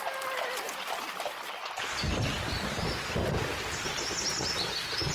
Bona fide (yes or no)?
yes